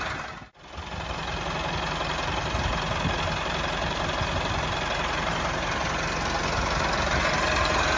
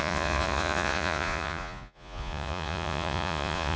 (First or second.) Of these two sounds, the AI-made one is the second